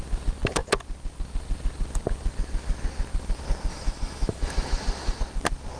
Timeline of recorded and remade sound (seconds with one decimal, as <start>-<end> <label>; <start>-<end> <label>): 0.0-3.7 recorded; 3.7-5.2 remade; 5.2-5.8 recorded